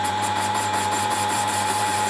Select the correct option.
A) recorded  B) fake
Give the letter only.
B